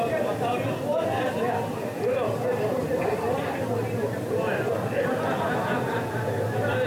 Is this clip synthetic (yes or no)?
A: no